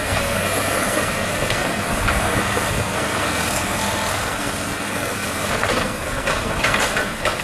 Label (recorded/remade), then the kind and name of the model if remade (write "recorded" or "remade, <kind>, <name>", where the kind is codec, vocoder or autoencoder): remade, codec, SNAC